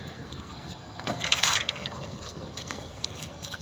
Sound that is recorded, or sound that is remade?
remade